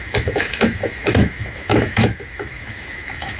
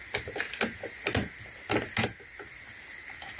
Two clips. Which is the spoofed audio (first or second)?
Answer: first